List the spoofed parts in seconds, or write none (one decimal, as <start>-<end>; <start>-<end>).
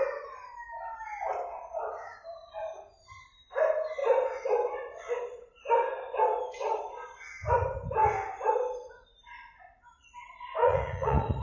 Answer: 10.6-11.4